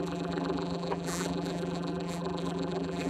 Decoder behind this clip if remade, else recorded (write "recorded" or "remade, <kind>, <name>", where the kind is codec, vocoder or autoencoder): remade, vocoder, BigVGAN v2